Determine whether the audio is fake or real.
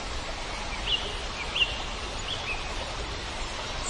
real